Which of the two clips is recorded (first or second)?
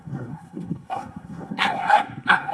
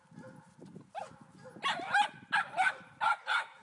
second